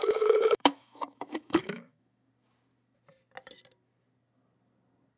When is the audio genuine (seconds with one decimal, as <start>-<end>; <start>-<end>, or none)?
2.3-5.2